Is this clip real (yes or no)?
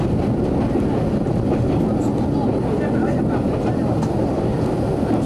yes